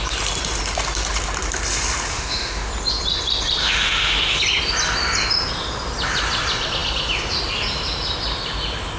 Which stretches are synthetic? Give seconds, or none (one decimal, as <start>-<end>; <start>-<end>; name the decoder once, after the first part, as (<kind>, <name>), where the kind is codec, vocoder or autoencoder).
2.1-2.7 (autoencoder, DAC-VAE); 3.6-4.4